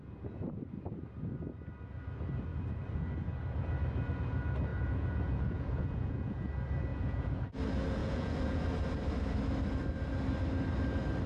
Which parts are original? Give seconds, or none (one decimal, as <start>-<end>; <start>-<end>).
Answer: 0.0-4.7; 6.5-6.9; 7.4-8.0; 8.6-11.3